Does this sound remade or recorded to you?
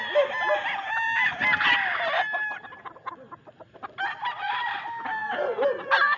recorded